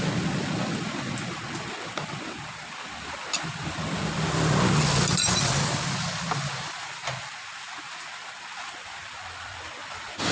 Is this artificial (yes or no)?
no